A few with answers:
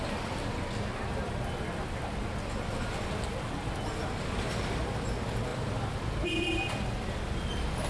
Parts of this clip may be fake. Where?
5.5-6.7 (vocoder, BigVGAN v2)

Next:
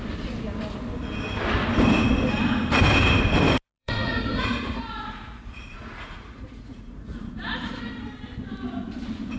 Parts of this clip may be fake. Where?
3.8-7.8 (vocoder, Vocos)